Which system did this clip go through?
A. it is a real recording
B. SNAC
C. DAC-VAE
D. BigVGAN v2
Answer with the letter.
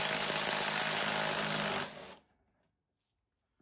A